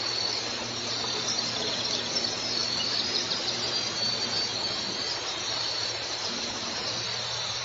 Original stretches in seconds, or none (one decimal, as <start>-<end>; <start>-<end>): 0.0-2.6; 3.9-7.6